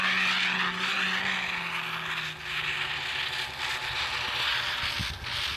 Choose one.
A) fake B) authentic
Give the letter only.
B